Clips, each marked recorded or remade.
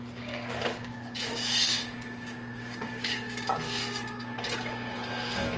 remade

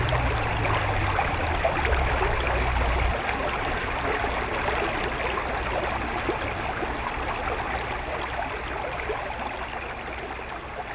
recorded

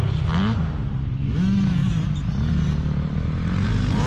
recorded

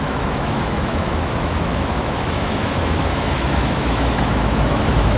remade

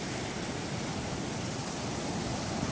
recorded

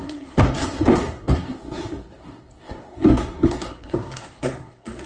remade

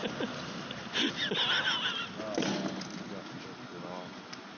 recorded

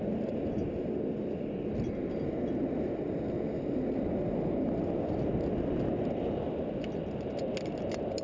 recorded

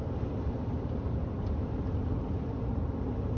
remade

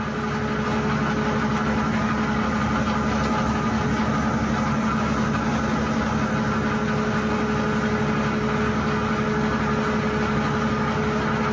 recorded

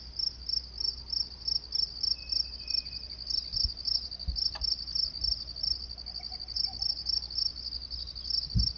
recorded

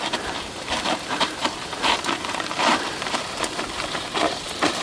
remade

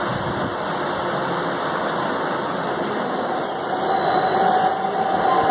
recorded